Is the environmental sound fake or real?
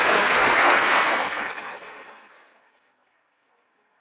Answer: fake